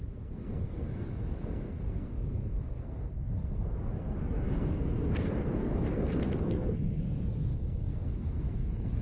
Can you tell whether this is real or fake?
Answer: fake